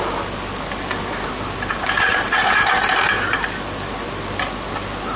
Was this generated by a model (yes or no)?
no